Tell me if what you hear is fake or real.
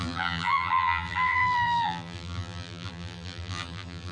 fake